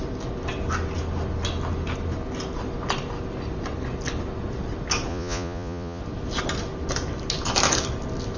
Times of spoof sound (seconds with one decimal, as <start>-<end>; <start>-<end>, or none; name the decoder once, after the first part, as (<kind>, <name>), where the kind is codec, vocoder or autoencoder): 5.1-6.0 (vocoder, Vocos)